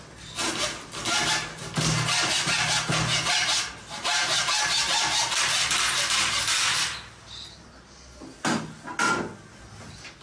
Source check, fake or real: real